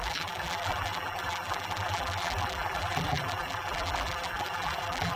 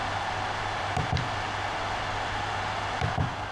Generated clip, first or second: first